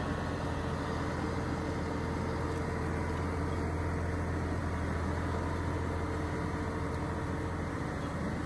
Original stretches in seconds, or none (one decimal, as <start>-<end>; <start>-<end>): 0.0-8.5